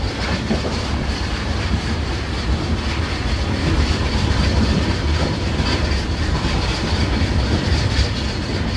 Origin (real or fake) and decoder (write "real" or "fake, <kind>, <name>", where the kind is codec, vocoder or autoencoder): fake, vocoder, BigVGAN v2